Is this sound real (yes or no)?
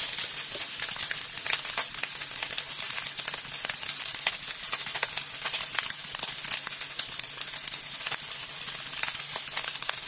yes